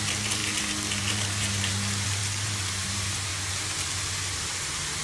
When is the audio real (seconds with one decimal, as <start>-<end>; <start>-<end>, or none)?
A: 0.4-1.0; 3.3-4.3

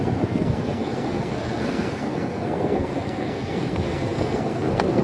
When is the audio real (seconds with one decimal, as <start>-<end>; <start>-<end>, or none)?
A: none

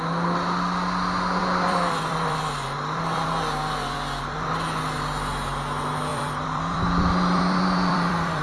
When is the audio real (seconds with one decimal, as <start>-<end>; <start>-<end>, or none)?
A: 0.0-1.4; 4.5-6.1

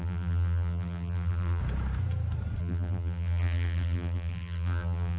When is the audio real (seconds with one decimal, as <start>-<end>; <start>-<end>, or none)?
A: 1.6-2.6

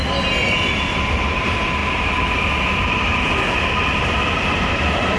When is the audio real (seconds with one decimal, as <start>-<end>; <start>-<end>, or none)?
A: 0.0-5.2